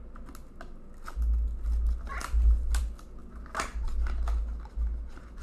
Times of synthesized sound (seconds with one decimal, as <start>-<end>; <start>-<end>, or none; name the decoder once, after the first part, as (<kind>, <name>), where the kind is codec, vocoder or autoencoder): none